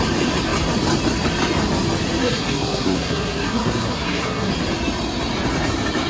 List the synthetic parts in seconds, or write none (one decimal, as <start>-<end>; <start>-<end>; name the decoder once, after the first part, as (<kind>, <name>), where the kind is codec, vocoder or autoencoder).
2.2-4.5 (codec, SNAC)